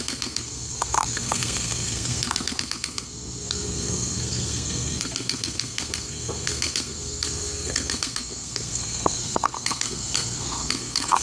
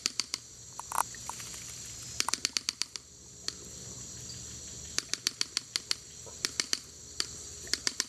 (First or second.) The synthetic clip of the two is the first